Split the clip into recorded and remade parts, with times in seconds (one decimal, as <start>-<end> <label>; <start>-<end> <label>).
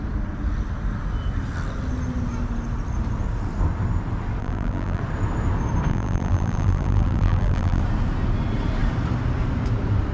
0.0-4.4 recorded; 4.4-5.0 remade; 5.0-5.9 recorded; 5.9-7.8 remade; 7.8-10.1 recorded